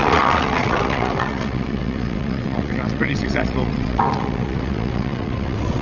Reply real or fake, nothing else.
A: fake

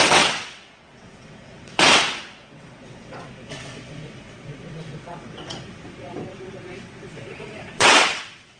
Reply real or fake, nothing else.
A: fake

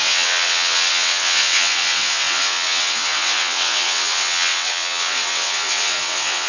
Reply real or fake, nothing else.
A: fake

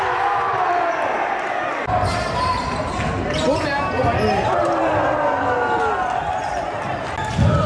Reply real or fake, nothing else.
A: real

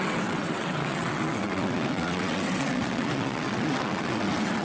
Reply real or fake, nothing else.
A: fake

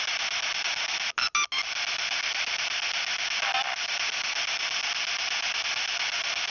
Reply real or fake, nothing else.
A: real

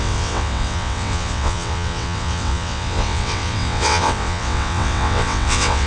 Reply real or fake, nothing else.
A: fake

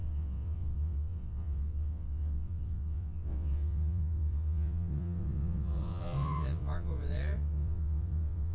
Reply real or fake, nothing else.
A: fake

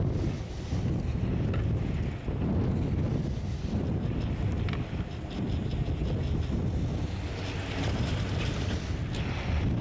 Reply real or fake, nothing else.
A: real